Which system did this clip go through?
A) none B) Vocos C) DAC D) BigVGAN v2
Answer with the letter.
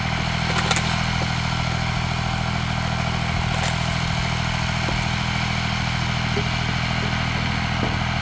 A